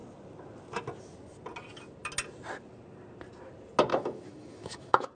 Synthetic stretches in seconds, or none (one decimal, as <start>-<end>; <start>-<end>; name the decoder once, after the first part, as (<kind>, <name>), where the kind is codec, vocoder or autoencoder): 3.9-5.1 (autoencoder, DAC-VAE)